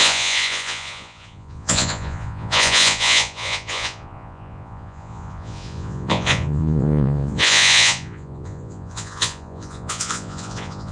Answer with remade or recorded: remade